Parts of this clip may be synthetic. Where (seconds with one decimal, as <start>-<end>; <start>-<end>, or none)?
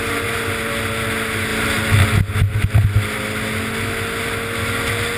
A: none